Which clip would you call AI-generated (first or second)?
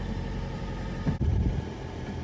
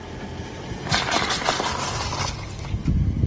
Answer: first